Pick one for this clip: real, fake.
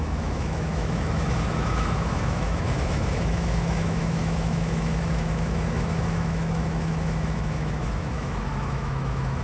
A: fake